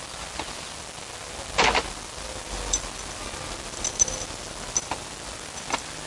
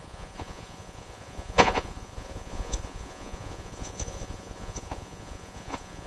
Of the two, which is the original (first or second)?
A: first